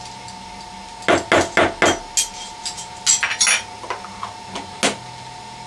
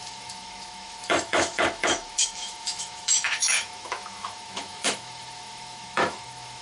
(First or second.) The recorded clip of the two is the first